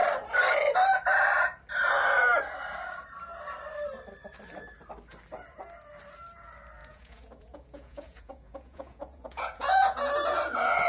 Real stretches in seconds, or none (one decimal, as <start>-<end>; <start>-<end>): 0.0-6.8; 10.1-10.9

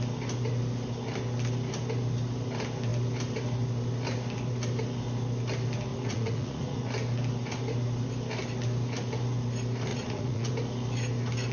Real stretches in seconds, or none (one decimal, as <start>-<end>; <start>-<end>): 0.0-5.9; 6.8-9.9; 10.5-11.5

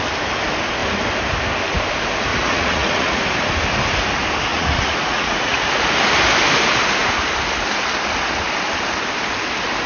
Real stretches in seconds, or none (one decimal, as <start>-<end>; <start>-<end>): 0.0-2.3; 3.2-4.5; 5.6-9.9

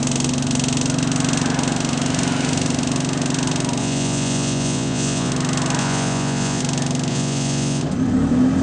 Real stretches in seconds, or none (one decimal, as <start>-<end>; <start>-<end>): 0.0-3.8; 5.3-5.8; 6.6-7.1; 7.8-8.6

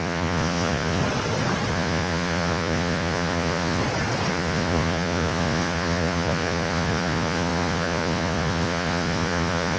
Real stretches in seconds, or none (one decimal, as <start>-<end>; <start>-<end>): 1.0-1.7; 3.8-4.3